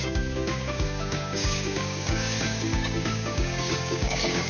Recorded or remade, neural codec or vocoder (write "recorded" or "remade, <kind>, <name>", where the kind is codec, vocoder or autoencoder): remade, codec, DAC